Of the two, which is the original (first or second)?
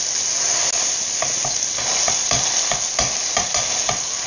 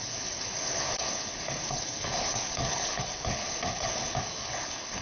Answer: first